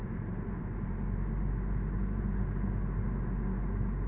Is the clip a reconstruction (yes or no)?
no